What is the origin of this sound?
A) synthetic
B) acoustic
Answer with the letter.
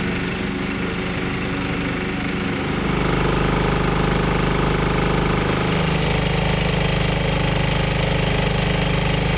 B